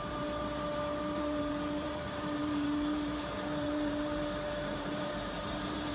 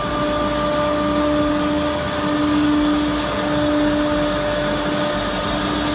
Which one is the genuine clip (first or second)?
second